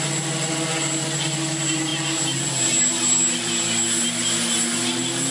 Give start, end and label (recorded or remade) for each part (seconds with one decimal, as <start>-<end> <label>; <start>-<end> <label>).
0.0-5.3 recorded